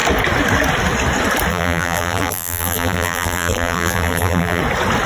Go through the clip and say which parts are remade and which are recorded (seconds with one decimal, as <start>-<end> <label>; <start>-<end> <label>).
0.0-1.5 recorded; 1.5-4.6 remade; 4.6-5.1 recorded